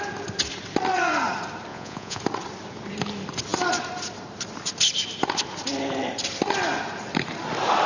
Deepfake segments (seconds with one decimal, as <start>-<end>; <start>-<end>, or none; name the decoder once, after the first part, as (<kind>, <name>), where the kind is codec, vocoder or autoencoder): 1.7-2.2 (vocoder, Vocos)